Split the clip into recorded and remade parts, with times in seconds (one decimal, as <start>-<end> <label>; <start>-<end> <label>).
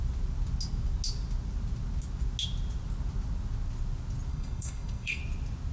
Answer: 0.0-4.3 recorded; 4.3-5.2 remade; 5.2-5.7 recorded